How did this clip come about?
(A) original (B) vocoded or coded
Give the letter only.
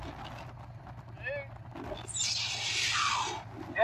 A